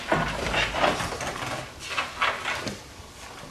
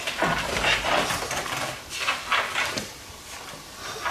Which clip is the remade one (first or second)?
second